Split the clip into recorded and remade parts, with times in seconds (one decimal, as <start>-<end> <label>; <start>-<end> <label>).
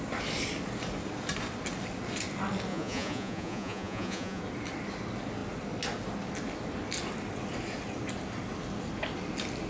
0.0-2.7 recorded; 2.7-4.4 remade; 4.4-9.7 recorded